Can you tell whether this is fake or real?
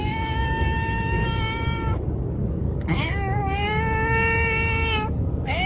fake